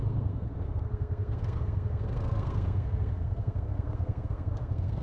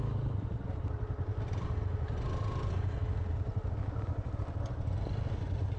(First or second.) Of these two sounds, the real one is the second